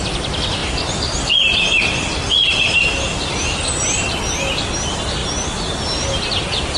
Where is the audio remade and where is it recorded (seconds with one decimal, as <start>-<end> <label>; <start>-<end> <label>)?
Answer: 0.0-6.8 recorded